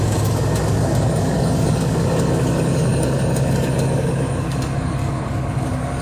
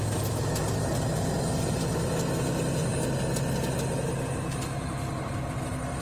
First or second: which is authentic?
second